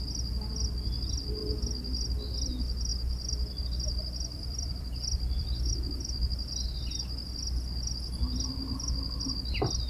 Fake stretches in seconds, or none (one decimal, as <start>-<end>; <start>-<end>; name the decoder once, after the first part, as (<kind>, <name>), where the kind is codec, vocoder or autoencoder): 4.3-5.7 (vocoder, BigVGAN v2)